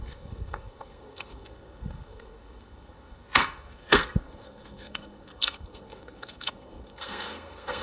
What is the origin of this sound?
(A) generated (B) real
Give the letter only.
A